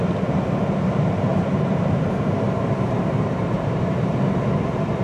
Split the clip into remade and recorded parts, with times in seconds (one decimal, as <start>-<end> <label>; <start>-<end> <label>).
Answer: 0.0-1.3 recorded; 1.3-4.3 remade; 4.3-5.0 recorded